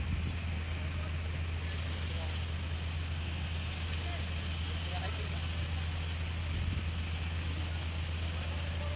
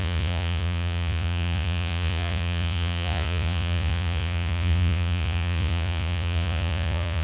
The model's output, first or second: second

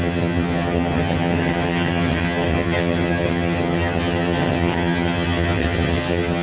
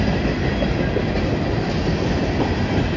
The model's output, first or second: first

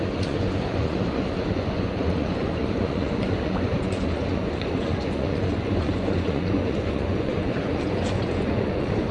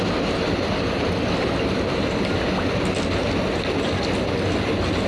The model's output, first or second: first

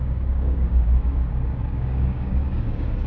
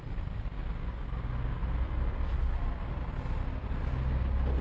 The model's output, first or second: first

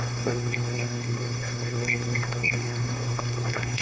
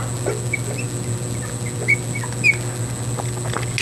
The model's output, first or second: first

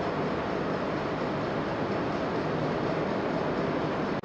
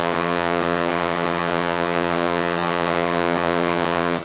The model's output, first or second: second